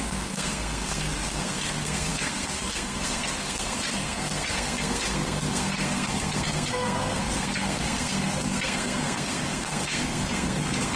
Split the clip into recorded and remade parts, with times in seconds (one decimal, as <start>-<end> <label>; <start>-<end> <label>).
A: 0.0-11.0 remade